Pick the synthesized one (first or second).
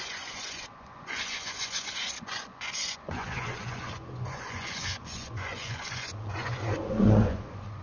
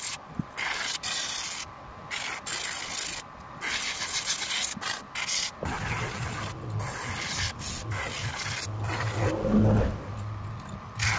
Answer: first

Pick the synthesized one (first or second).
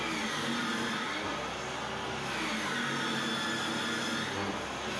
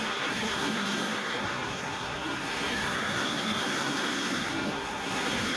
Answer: second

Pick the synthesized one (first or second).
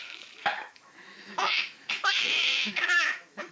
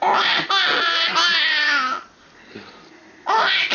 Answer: first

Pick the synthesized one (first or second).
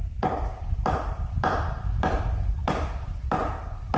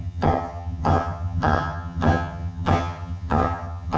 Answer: second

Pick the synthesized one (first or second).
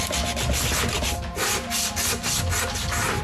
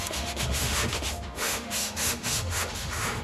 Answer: second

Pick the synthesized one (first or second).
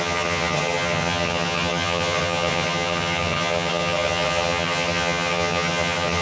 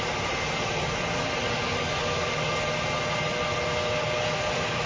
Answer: first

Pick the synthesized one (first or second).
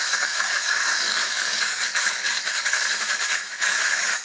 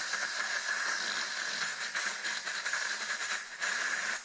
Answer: first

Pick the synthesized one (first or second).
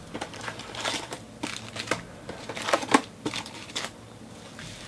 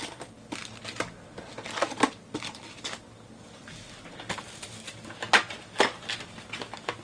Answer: first